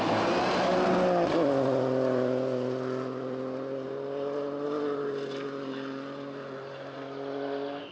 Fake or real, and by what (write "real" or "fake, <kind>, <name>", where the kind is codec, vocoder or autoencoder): real